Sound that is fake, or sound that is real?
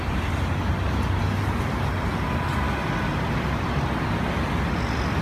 real